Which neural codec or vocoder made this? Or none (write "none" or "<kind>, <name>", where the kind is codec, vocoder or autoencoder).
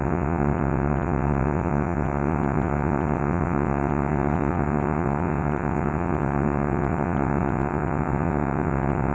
vocoder, WaveNeXt